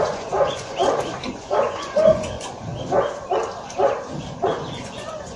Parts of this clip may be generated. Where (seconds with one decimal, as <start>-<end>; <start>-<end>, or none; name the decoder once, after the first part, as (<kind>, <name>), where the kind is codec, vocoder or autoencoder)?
0.0-0.8 (vocoder, Vocos); 1.3-2.7; 4.2-5.4